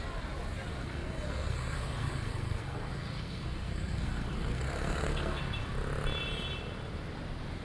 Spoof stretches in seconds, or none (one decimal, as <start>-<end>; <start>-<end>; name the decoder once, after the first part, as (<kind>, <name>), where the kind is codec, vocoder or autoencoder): 0.8-5.4 (codec, SNAC)